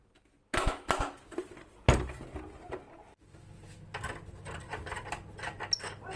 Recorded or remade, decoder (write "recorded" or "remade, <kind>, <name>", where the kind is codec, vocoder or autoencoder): recorded